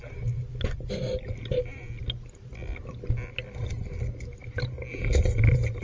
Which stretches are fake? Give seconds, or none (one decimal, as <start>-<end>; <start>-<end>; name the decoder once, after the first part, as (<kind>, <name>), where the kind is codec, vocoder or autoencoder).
none